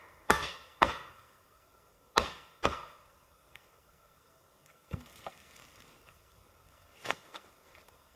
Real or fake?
fake